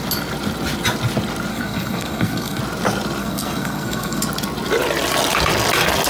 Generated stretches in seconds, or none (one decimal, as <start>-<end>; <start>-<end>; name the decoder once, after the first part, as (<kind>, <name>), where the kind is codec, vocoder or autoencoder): 1.5-2.6 (codec, SNAC); 3.2-4.2